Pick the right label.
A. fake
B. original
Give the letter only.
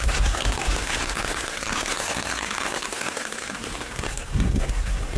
A